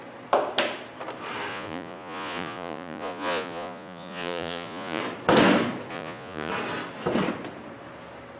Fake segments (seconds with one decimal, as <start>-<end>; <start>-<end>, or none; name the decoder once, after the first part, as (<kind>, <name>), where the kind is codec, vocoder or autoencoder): 1.5-5.0 (vocoder, Vocos); 5.9-6.5

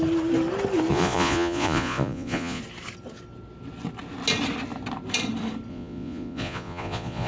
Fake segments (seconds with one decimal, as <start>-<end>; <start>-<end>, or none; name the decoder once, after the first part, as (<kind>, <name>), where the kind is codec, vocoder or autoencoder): 0.9-2.6 (vocoder, Vocos); 5.7-7.3

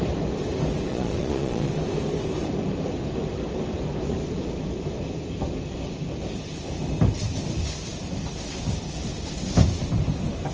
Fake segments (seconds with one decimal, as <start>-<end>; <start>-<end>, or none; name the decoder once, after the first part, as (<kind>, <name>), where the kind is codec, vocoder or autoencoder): 0.9-1.7 (vocoder, Vocos)

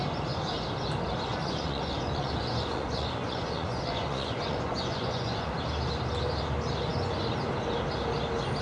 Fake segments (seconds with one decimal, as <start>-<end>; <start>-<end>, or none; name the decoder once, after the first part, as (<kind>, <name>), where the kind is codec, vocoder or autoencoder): 1.3-5.5 (vocoder, Vocos)

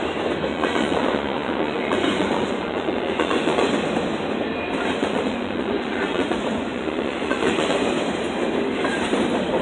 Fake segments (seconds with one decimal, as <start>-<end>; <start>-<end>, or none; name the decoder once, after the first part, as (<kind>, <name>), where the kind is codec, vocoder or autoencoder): 0.5-3.7 (vocoder, Vocos); 5.0-7.9

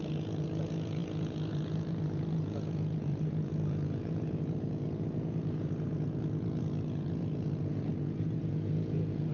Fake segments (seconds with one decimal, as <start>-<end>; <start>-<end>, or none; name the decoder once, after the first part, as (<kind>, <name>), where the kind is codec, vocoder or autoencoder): 0.0-9.3 (vocoder, Vocos)